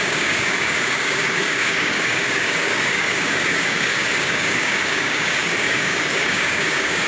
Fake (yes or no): yes